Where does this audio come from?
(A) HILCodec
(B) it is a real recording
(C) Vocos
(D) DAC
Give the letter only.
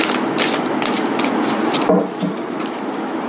B